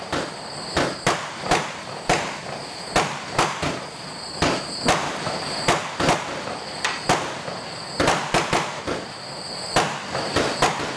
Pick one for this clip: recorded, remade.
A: recorded